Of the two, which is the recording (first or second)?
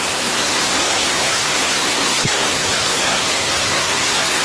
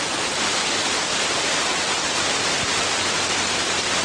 second